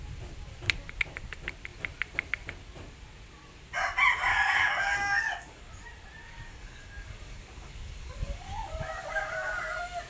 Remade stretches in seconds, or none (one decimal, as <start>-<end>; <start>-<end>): 4.3-5.7; 6.2-9.5